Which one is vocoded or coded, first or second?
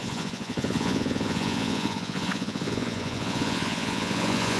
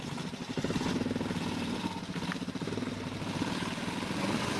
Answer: first